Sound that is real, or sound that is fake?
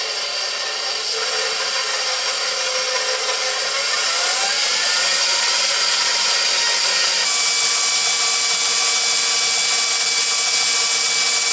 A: real